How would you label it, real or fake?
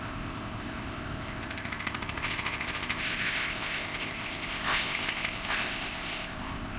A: fake